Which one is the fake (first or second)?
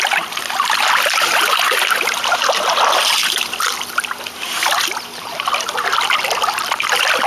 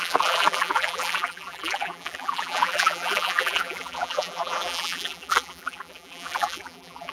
second